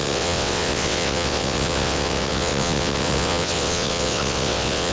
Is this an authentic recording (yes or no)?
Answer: no